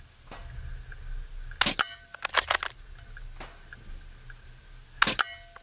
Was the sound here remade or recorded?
recorded